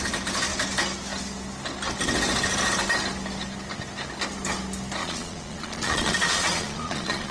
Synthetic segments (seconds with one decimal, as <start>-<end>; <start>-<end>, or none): 5.0-7.3